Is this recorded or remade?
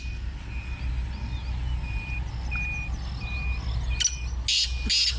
recorded